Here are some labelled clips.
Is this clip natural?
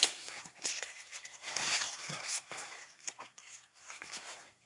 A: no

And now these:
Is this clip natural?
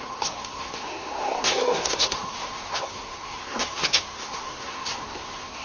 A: no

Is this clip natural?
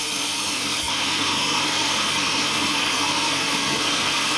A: no